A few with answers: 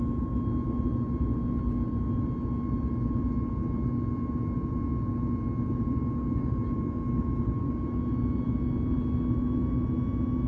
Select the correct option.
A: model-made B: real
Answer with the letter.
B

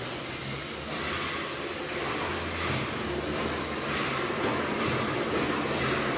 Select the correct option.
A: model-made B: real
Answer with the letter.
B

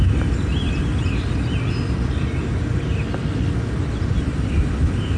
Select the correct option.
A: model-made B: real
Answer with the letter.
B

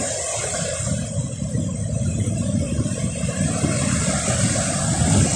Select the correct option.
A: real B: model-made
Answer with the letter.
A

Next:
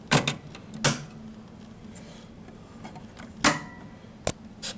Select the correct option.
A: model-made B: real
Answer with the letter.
B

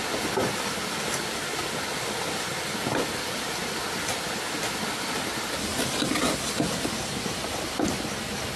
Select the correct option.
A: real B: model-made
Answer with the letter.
A